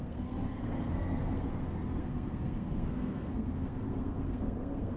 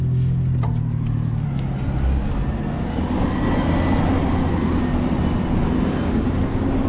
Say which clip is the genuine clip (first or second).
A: second